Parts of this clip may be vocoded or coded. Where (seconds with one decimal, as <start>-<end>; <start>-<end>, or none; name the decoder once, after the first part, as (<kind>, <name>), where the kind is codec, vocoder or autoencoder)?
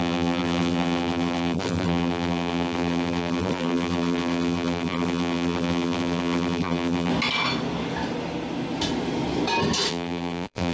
0.0-7.1 (vocoder, BigVGAN v2); 9.9-10.7